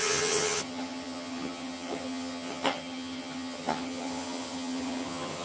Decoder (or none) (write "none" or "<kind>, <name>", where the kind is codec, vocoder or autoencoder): vocoder, HiFi-GAN